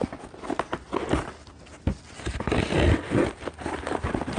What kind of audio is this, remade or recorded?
recorded